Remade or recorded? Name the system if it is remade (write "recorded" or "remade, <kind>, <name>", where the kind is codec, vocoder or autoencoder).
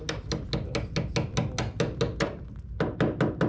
recorded